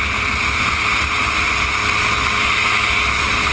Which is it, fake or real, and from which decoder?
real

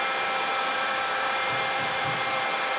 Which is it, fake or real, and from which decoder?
fake, vocoder, BigVGAN v2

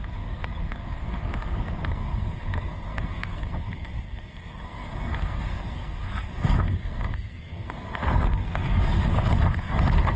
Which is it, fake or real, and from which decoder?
fake, codec, SNAC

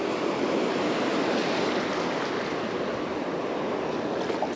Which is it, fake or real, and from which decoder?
real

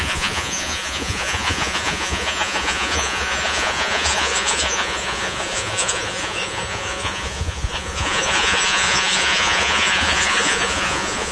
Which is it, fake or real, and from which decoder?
fake, vocoder, Vocos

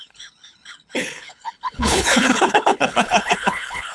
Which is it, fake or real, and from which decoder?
fake, codec, HILCodec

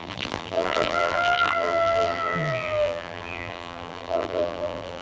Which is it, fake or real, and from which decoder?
fake, vocoder, BigVGAN v2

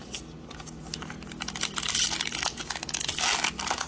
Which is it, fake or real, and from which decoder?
real